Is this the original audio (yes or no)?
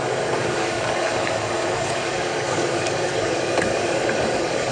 no